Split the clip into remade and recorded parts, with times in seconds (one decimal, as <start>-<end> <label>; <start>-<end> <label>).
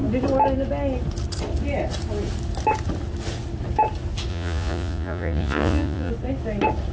0.0-4.3 recorded; 4.3-6.1 remade; 6.1-6.9 recorded